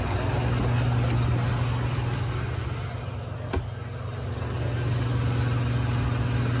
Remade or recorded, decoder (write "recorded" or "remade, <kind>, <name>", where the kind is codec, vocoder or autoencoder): recorded